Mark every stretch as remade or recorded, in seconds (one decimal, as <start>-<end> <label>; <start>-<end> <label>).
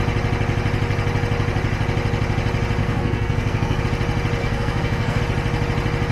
0.0-2.8 recorded; 2.8-3.8 remade; 3.8-4.4 recorded; 4.4-5.2 remade; 5.2-6.1 recorded